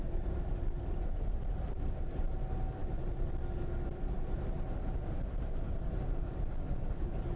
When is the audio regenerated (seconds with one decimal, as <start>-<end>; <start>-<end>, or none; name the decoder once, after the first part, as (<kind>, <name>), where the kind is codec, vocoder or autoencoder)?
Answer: 0.0-2.0 (vocoder, BigVGAN v2)